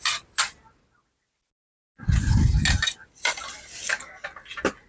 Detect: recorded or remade recorded